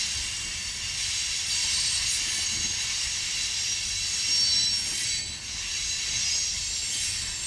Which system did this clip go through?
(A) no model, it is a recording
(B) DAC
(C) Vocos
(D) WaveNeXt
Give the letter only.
A